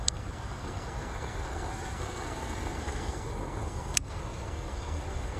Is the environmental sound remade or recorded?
remade